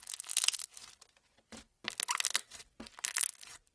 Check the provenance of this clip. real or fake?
real